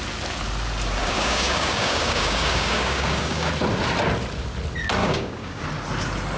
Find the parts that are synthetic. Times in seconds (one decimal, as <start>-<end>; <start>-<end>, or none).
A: 1.0-3.5; 5.0-5.6